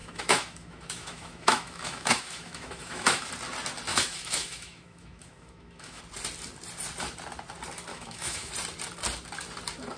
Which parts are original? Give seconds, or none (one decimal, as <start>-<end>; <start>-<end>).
3.3-3.9; 6.0-7.9; 8.5-10.0